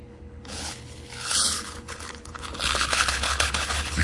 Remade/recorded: remade